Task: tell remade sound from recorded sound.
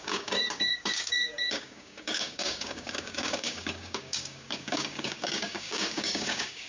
remade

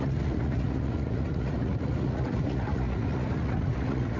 remade